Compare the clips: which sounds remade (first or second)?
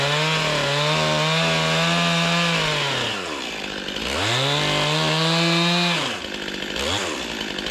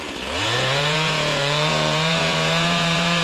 second